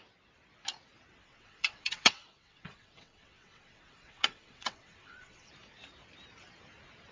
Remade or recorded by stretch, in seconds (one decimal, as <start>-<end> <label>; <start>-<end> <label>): 0.0-1.2 recorded; 1.2-5.5 remade; 5.5-7.1 recorded